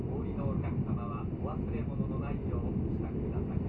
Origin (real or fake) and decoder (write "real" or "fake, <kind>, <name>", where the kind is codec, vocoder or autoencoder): real